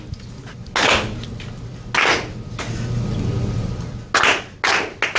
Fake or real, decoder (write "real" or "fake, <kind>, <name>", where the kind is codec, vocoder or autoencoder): real